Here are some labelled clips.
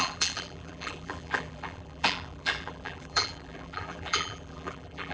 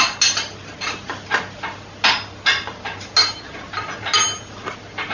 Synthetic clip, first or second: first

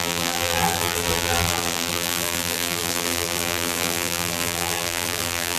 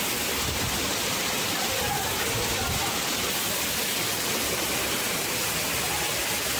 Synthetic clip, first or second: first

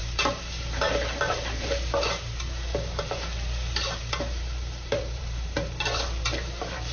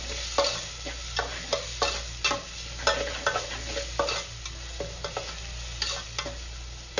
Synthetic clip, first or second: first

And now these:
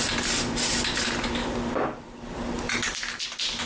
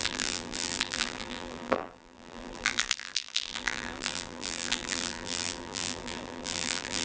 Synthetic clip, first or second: second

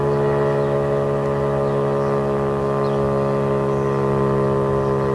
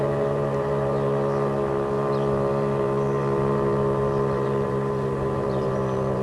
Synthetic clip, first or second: second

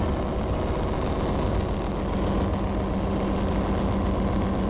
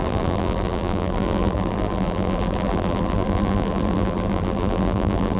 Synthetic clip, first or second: second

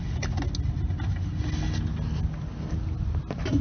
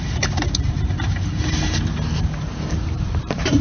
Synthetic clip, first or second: second